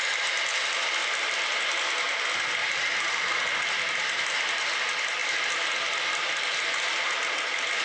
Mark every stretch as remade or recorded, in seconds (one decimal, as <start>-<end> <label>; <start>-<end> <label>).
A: 0.0-7.8 recorded